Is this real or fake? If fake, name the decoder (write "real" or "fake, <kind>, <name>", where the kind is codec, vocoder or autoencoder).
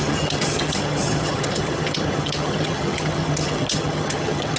fake, vocoder, HiFi-GAN